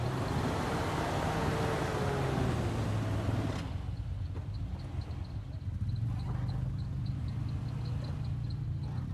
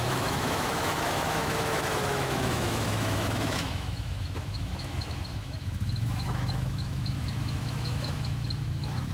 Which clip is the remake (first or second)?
second